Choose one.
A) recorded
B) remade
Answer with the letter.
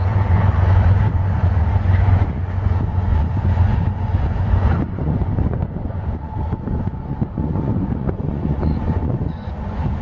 B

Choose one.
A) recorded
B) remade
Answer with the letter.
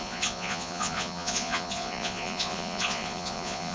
B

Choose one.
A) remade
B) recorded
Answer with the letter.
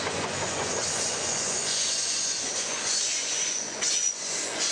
A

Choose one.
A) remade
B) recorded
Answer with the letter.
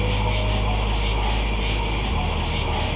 B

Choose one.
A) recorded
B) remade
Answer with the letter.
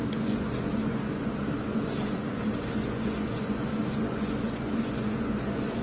B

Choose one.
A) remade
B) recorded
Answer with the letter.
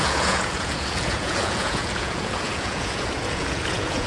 A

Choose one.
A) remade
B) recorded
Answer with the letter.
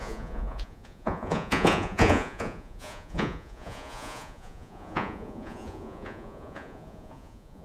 A